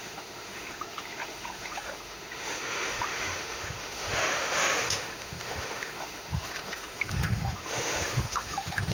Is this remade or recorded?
remade